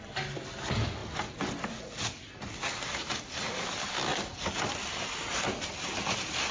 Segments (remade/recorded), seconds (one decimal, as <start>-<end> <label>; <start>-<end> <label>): 0.0-6.5 recorded